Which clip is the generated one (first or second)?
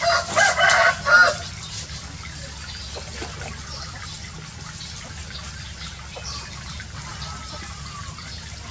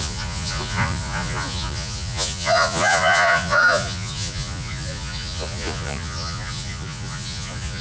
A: second